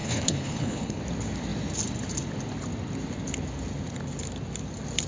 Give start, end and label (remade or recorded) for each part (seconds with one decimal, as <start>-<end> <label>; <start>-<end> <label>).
0.0-1.0 remade; 1.0-5.1 recorded